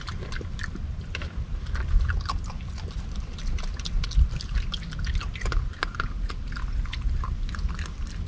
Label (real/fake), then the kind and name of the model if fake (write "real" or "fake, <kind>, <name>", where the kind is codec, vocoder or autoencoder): real